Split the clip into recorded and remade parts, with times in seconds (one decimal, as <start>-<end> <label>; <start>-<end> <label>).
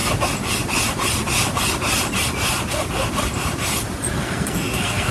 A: 0.0-4.2 recorded; 4.2-5.1 remade